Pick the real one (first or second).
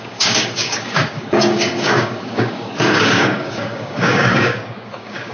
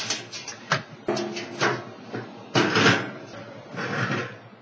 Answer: second